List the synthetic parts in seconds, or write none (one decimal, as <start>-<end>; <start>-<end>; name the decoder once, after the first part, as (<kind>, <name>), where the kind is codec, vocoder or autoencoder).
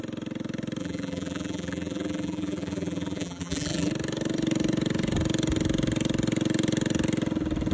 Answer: 0.8-3.9 (vocoder, BigVGAN v2)